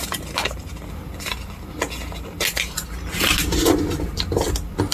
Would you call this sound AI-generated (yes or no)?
no